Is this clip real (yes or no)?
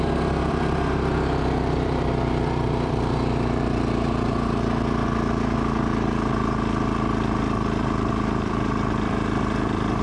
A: no